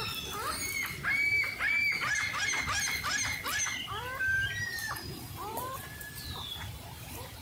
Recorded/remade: recorded